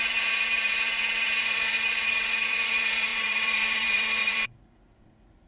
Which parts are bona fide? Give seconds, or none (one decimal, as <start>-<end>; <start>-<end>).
none